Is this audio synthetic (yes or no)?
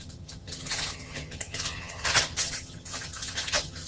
yes